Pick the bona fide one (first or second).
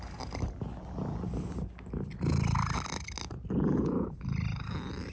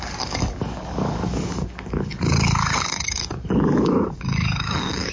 first